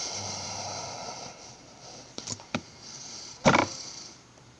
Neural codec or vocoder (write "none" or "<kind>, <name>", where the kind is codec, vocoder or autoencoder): vocoder, BigVGAN v2